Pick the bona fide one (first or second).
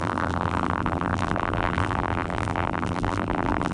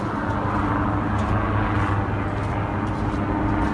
second